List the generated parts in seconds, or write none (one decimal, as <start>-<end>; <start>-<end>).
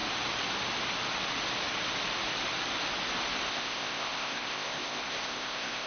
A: 3.5-5.9